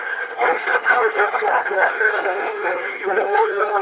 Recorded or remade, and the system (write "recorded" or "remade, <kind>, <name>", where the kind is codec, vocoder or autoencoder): remade, codec, SNAC